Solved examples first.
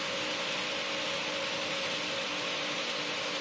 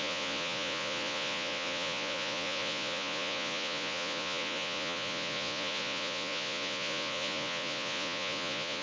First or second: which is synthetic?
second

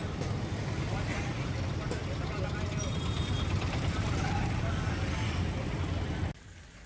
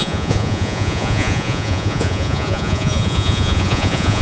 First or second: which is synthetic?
second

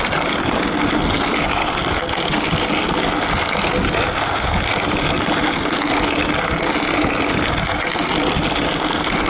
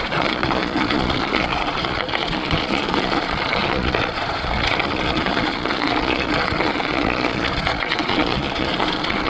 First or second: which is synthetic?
second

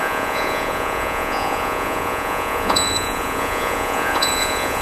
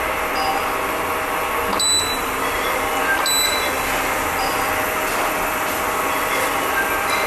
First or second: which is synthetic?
first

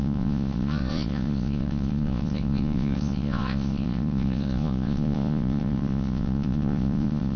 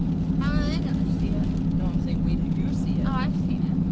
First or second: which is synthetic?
first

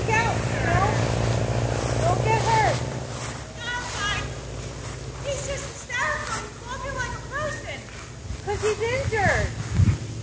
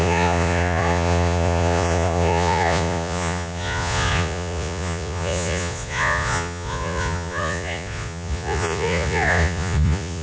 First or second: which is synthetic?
second